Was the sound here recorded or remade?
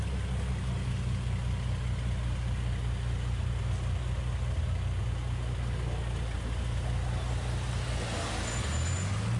recorded